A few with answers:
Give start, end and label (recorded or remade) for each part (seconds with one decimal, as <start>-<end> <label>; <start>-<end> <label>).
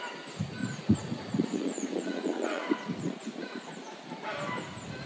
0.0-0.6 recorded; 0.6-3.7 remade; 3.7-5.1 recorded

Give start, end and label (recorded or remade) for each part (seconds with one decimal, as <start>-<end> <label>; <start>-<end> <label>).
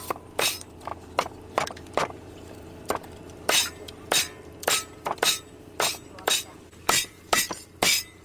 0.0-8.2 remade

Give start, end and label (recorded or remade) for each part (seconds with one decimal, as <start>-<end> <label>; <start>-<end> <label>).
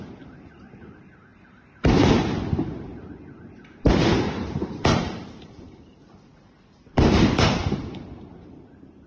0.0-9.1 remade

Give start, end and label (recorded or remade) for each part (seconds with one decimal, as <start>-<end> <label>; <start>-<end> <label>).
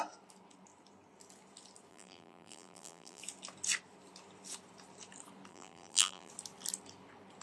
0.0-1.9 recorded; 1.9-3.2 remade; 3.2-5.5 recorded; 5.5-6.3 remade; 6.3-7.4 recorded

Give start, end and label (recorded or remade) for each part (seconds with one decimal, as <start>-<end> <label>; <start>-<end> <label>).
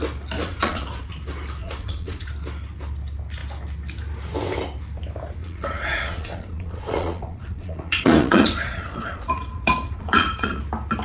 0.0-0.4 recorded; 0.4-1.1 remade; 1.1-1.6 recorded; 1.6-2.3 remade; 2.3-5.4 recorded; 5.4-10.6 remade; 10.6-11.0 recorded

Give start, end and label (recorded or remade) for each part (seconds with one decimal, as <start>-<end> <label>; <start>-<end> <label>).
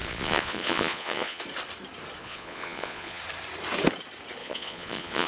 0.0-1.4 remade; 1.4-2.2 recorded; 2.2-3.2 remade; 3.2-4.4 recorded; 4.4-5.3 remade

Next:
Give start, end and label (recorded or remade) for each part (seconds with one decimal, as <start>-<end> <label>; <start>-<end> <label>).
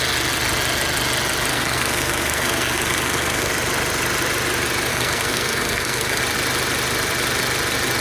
0.0-1.5 recorded; 1.5-3.5 remade; 3.5-4.9 recorded; 4.9-6.2 remade; 6.2-8.0 recorded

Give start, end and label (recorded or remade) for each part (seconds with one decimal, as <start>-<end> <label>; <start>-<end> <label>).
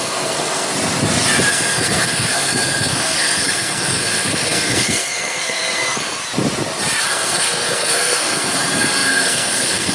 0.0-0.7 remade; 0.7-1.5 recorded; 1.5-6.2 remade; 6.2-7.0 recorded; 7.0-9.9 remade